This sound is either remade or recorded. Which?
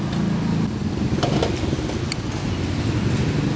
recorded